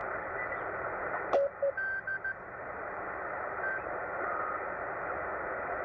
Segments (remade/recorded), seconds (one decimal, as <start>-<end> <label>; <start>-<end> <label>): 0.0-0.8 remade; 0.8-5.8 recorded